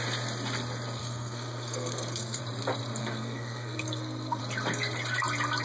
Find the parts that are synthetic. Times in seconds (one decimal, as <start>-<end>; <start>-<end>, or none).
1.0-2.4; 3.0-4.4